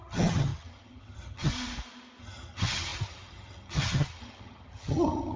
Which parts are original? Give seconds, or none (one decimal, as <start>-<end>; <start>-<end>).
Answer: 1.5-2.2